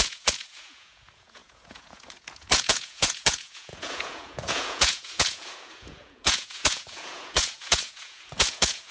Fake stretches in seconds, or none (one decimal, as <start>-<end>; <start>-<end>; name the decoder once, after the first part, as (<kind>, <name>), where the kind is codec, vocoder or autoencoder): 0.0-8.9 (vocoder, Vocos)